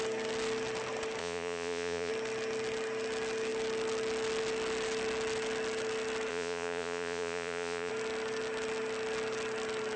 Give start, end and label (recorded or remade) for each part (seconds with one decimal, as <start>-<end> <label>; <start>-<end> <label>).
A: 0.0-1.2 recorded; 1.2-2.1 remade; 2.1-6.3 recorded; 6.3-7.9 remade; 7.9-10.0 recorded